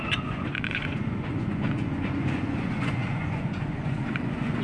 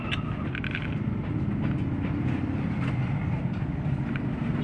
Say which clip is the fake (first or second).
first